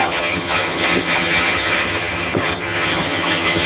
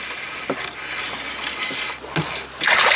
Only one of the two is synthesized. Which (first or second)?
first